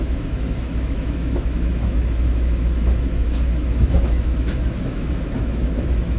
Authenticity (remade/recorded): remade